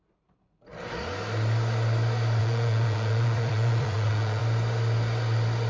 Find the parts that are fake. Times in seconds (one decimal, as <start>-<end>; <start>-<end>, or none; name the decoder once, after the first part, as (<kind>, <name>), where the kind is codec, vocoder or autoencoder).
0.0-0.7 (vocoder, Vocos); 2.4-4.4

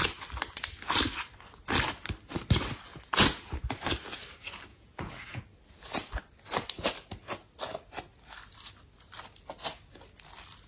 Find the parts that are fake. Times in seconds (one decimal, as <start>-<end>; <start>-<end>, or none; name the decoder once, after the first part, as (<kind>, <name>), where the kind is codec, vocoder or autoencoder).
2.9-3.5 (vocoder, Vocos); 4.7-5.4

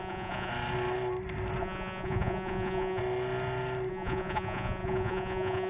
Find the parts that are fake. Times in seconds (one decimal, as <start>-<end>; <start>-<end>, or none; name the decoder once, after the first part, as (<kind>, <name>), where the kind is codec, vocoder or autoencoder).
0.0-0.5 (vocoder, Vocos); 1.6-3.0; 3.9-5.7

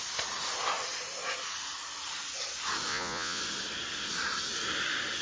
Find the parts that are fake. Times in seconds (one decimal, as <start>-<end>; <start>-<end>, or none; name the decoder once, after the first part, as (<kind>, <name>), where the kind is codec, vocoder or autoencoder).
2.9-3.4 (vocoder, Vocos)

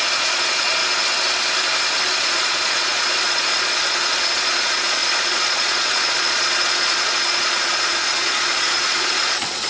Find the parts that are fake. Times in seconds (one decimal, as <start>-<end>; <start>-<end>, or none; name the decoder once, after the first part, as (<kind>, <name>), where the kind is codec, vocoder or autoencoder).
0.0-0.8 (vocoder, Vocos); 2.2-9.7